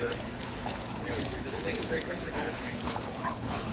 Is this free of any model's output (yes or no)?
no